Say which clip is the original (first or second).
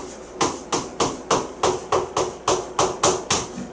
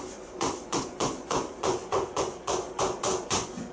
first